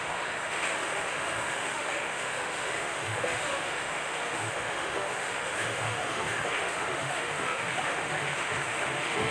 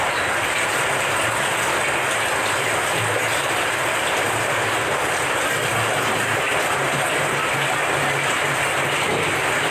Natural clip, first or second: second